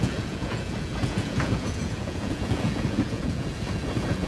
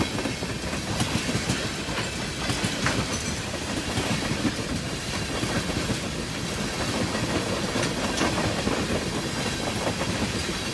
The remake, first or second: first